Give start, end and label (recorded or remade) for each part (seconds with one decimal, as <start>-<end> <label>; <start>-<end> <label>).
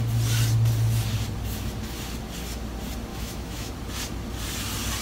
0.0-3.1 recorded; 3.1-3.7 remade; 3.7-5.0 recorded